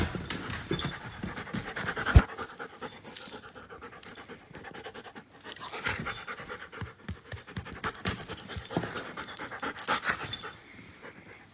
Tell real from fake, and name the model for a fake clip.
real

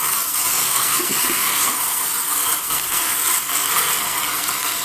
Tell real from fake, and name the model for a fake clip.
fake, codec, SNAC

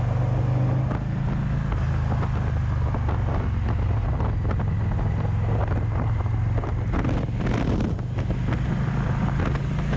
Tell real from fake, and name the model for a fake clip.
real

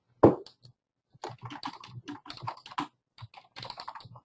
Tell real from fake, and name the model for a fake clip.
real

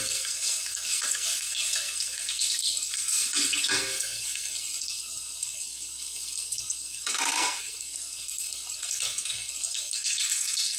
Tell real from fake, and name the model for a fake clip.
fake, codec, SNAC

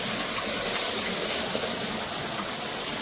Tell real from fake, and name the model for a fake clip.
real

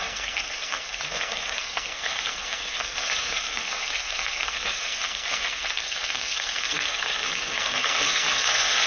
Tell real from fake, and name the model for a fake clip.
fake, codec, SNAC